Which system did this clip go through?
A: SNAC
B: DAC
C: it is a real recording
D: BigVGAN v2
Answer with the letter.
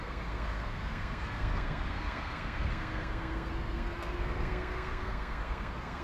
A